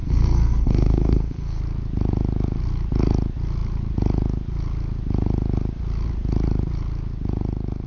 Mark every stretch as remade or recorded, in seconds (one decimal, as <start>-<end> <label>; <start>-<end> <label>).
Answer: 0.0-1.6 remade; 1.6-7.9 recorded